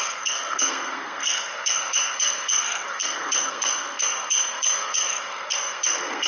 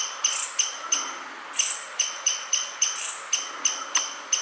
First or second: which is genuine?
second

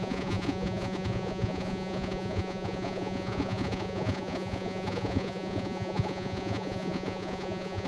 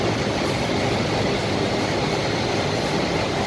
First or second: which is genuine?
second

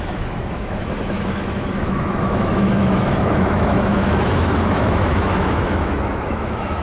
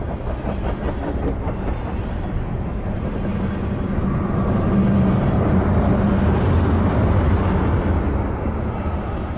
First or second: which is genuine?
second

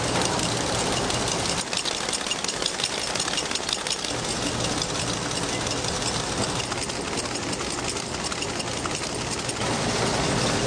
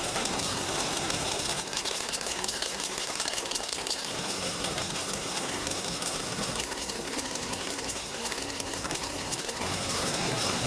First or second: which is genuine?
first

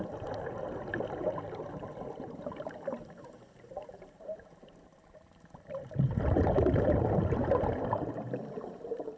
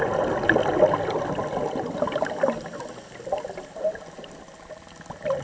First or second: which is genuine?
second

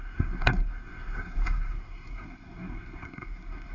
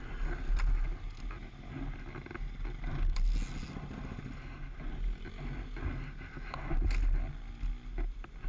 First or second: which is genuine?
second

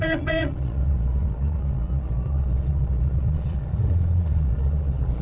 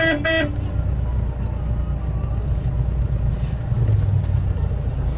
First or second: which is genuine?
second